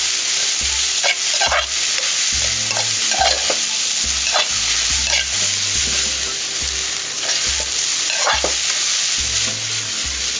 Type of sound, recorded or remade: recorded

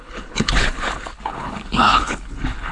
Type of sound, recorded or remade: remade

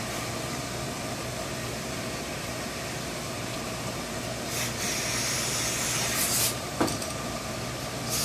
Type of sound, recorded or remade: recorded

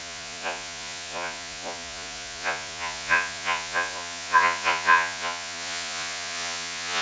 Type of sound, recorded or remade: remade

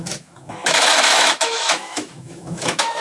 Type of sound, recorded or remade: remade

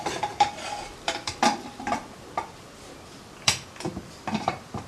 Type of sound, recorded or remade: remade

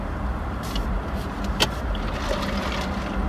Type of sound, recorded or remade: recorded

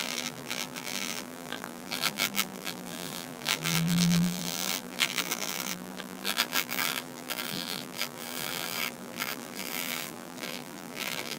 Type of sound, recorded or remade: remade